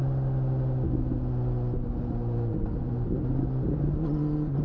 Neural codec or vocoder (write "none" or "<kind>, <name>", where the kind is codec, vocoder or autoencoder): none